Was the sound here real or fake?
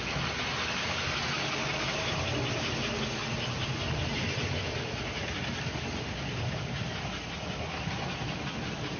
real